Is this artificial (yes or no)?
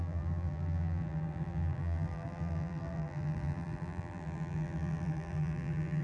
yes